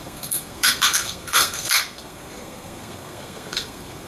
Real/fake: fake